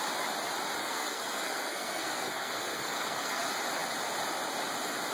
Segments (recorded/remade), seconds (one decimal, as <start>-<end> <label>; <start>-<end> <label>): 0.0-0.8 recorded; 0.8-3.4 remade; 3.4-5.1 recorded